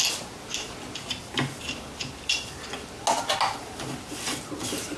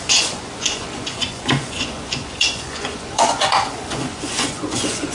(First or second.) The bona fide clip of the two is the first